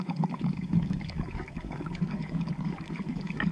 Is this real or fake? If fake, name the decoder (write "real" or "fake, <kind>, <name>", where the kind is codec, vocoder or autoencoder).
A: fake, codec, DAC